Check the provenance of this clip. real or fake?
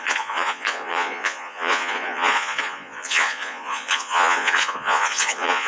fake